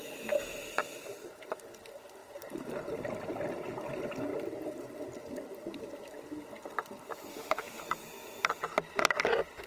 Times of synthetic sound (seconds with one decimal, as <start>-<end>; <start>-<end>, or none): 7.3-7.8